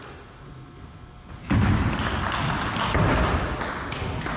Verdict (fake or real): real